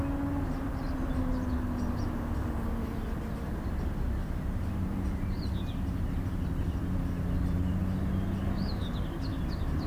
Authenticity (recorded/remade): recorded